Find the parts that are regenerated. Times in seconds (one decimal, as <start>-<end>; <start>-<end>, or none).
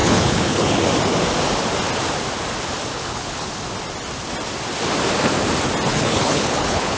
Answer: 0.0-0.8; 2.9-3.5; 5.9-7.0